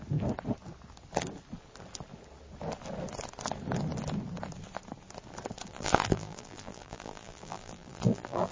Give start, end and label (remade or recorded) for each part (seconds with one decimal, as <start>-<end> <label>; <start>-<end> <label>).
0.0-5.7 recorded; 5.7-8.5 remade